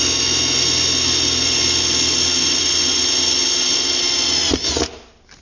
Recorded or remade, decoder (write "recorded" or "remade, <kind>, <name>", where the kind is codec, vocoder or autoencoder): recorded